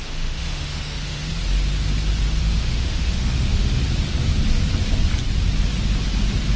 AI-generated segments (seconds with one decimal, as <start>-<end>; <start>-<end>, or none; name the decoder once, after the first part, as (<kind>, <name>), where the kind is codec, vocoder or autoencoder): 0.0-1.3 (autoencoder, DAC-VAE); 2.4-3.8